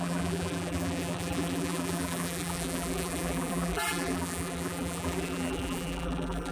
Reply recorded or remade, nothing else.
remade